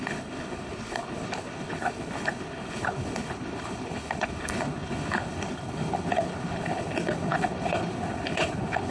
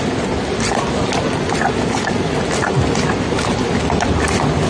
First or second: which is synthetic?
first